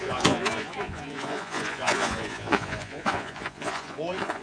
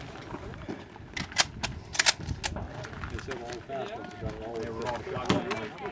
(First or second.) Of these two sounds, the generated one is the first